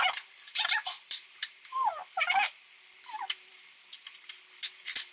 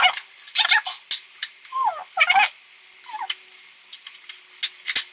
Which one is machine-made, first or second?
first